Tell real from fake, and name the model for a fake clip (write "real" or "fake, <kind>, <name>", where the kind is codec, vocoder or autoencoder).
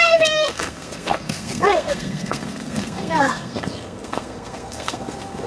fake, codec, SNAC